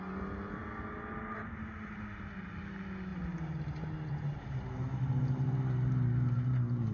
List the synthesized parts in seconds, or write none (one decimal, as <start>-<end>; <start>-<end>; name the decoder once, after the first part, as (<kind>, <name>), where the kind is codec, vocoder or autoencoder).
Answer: none